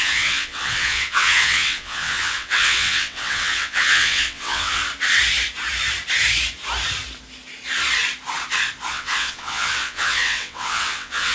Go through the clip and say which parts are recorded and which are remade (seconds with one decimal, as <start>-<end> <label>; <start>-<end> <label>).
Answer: 0.0-4.8 remade; 4.8-8.9 recorded; 8.9-11.3 remade